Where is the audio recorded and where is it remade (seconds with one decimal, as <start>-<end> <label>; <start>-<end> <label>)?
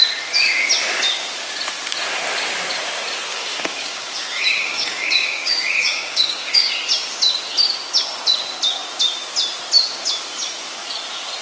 0.0-3.3 recorded; 3.3-6.7 remade; 6.7-11.4 recorded